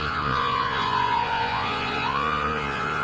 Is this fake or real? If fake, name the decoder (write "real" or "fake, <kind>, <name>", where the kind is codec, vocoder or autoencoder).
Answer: fake, vocoder, Vocos